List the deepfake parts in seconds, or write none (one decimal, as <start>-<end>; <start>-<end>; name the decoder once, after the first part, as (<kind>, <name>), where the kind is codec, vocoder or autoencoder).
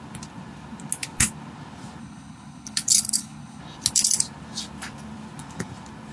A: 2.0-3.6 (codec, HILCodec)